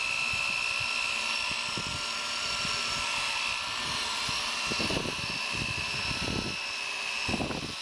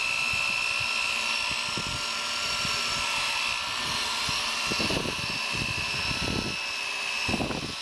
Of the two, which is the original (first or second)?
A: second